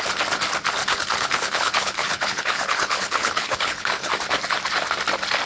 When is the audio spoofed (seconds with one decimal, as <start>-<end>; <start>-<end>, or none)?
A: 0.8-4.1